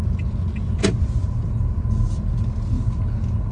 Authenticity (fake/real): real